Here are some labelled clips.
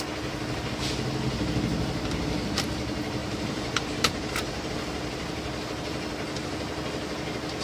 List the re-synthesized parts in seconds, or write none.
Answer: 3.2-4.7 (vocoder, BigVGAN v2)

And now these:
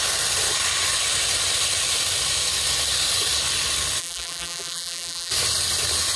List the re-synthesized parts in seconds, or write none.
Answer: 4.0-5.3 (vocoder, BigVGAN v2)

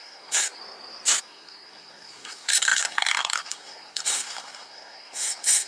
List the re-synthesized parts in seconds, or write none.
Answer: 0.0-0.6 (codec, SNAC); 1.2-5.7

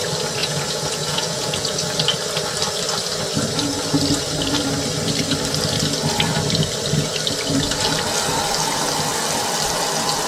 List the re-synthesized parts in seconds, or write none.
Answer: 0.4-1.9 (vocoder, Vocos)

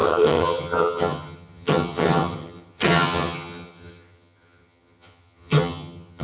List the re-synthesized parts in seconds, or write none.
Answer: 0.0-6.2 (vocoder, HiFi-GAN)

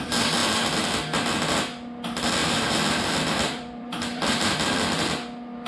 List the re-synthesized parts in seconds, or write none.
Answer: 2.4-5.0 (vocoder, BigVGAN v2)

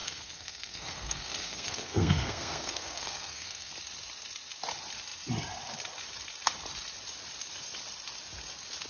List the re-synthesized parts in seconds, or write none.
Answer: 0.0-3.7 (codec, SNAC)

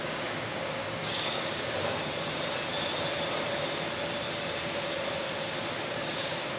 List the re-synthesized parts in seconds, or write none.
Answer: 0.0-2.0 (codec, DAC); 5.8-6.6